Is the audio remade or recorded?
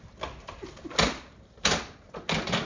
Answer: recorded